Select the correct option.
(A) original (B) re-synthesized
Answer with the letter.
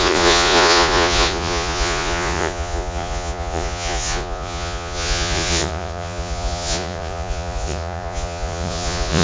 B